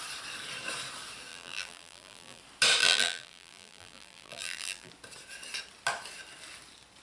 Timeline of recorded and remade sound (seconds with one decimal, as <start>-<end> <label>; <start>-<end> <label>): 0.0-1.3 recorded; 1.3-2.4 remade; 2.4-2.8 recorded; 2.8-4.9 remade; 4.9-7.0 recorded